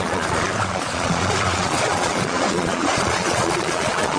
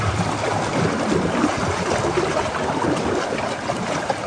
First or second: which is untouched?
second